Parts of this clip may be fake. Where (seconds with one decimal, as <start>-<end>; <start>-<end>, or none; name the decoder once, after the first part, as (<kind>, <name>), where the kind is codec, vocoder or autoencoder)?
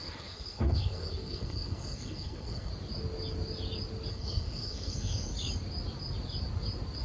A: 0.0-2.7 (codec, SNAC); 4.1-5.3